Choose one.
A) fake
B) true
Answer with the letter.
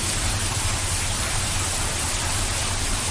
A